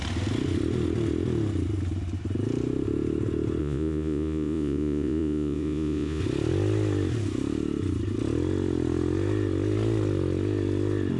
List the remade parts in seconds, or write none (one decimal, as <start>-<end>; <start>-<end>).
3.6-6.2